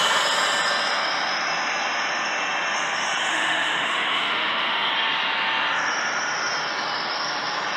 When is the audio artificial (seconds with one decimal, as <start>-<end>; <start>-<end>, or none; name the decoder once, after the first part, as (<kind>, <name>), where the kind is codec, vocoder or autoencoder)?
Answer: 3.3-4.9 (autoencoder, DAC-VAE)